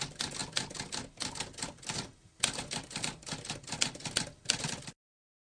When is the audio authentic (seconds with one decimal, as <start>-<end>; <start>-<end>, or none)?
0.0-5.5